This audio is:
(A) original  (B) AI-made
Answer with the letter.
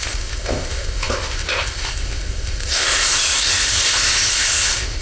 B